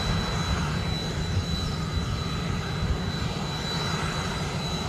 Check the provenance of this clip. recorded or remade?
recorded